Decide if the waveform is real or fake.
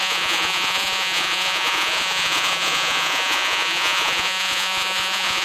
fake